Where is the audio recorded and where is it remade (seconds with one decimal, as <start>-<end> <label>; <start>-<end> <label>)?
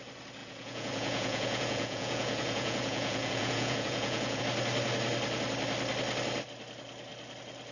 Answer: 0.0-0.4 recorded; 0.4-4.4 remade; 4.4-7.7 recorded